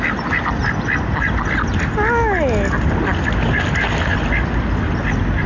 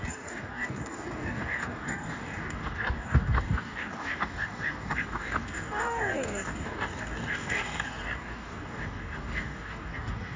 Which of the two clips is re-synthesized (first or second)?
second